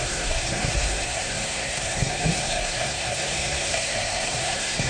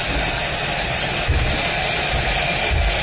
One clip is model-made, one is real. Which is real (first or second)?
second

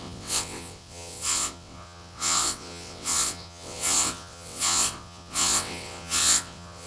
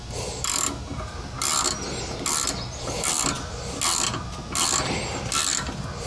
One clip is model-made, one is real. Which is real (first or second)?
second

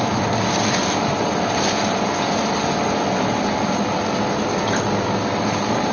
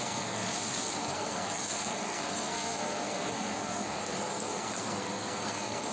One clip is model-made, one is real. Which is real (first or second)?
first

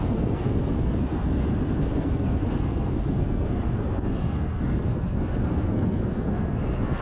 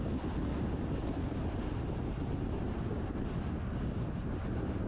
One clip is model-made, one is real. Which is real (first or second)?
second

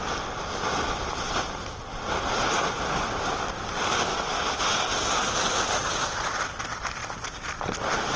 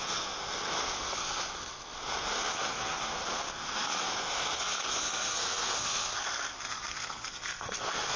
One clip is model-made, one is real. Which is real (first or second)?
first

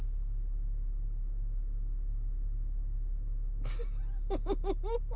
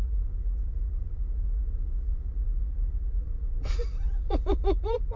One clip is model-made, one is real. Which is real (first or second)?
first